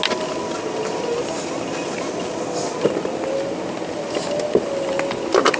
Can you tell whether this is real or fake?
real